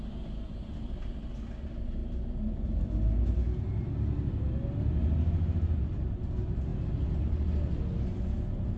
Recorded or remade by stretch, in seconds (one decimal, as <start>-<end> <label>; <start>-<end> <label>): 0.0-8.8 recorded